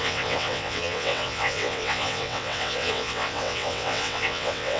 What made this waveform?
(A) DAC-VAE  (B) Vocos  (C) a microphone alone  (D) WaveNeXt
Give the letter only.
D